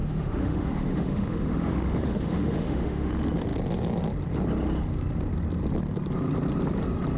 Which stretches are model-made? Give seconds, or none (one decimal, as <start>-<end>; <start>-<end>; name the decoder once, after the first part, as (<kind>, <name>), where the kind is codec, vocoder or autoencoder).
0.0-3.1 (autoencoder, DAC-VAE)